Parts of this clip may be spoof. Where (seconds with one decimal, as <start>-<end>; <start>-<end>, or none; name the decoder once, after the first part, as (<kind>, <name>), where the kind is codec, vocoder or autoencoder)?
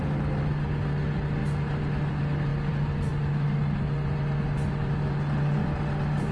none